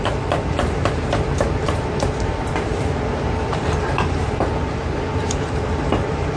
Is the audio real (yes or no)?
no